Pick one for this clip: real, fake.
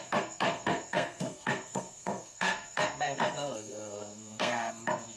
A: fake